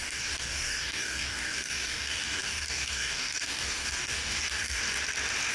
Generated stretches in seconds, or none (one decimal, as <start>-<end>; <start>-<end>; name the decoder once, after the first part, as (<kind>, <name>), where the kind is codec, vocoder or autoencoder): 0.0-4.8 (codec, DAC)